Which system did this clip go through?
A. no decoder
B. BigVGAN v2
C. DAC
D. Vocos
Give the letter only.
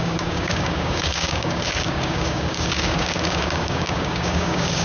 C